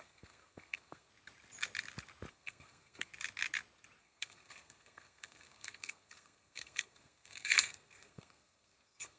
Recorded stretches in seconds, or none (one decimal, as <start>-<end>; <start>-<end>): 1.1-2.3; 3.1-4.0